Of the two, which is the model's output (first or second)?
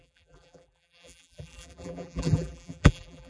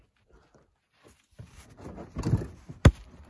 first